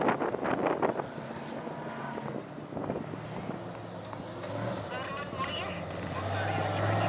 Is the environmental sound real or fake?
real